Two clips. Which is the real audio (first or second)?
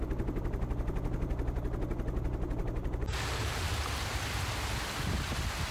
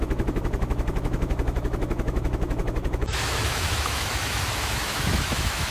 first